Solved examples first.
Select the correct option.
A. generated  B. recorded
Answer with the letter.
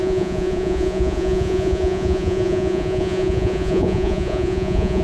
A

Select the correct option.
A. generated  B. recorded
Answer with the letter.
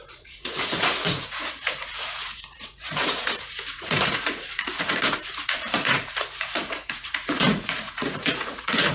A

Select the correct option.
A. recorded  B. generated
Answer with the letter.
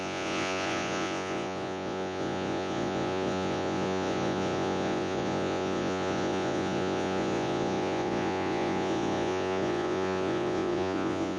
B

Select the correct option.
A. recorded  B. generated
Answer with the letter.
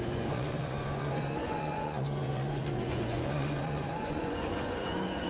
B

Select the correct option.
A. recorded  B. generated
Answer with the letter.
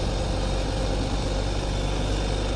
A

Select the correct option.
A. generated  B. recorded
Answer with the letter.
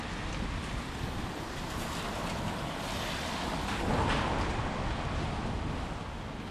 B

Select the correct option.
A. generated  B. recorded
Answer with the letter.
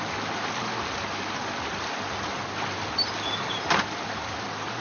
B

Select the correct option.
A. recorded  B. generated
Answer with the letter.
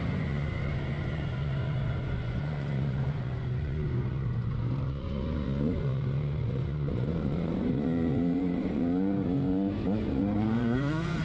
B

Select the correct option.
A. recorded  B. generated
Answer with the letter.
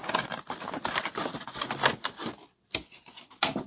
A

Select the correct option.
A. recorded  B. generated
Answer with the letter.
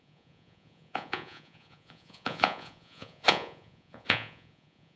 B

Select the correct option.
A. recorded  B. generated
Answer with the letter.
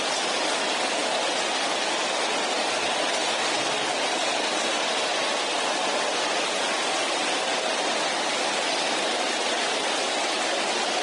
A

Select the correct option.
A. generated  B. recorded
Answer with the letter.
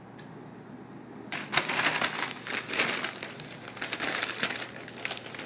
B